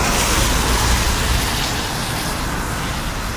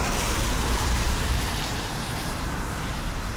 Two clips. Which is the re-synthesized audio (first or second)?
second